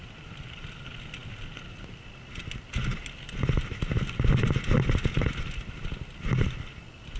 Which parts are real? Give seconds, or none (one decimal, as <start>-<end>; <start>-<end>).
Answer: 0.0-7.2